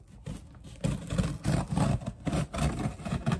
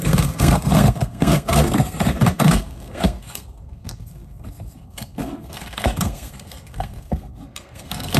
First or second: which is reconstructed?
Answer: second